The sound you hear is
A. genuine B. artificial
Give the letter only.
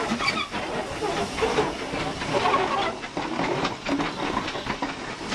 A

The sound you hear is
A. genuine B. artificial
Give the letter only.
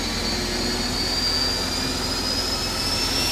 A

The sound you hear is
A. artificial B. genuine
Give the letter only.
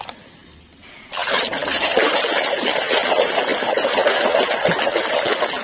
B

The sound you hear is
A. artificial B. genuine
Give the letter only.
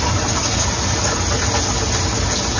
B